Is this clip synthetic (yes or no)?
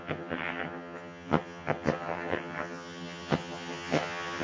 yes